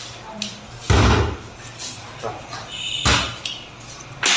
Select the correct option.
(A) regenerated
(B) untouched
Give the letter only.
B